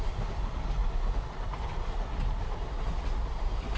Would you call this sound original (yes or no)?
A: yes